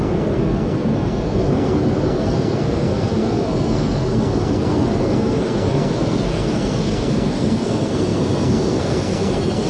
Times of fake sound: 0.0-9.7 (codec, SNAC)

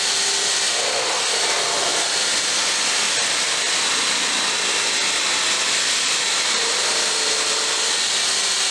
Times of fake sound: none

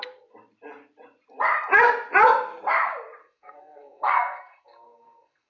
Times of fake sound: 3.2-5.5 (codec, SNAC)

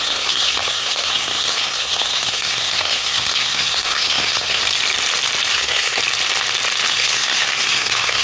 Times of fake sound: 0.0-4.6 (codec, SNAC); 5.5-6.0; 6.9-8.2

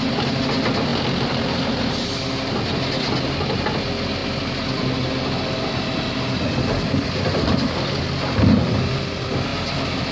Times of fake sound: none

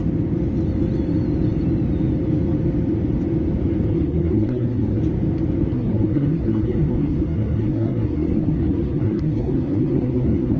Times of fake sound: 3.9-5.0 (codec, SNAC); 5.7-10.6

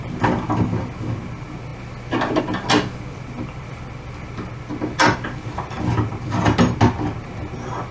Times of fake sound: none

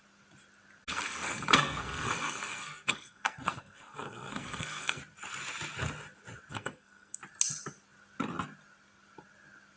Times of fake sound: 0.9-5.0 (codec, SNAC); 6.5-7.2